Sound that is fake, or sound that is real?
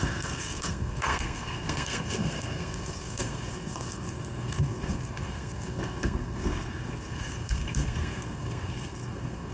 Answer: fake